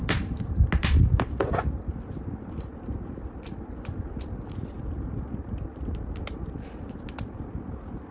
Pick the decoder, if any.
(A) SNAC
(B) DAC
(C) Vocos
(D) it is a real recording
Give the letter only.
D